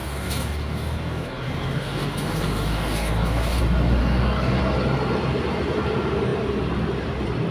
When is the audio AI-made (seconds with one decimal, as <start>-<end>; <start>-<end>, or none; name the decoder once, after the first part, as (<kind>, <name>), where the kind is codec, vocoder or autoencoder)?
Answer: 0.0-3.6 (codec, DAC); 4.0-4.6